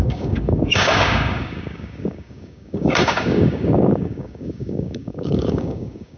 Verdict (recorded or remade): remade